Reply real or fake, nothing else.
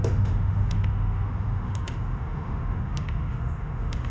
fake